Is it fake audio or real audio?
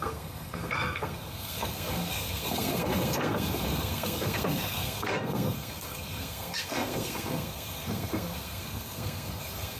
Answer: fake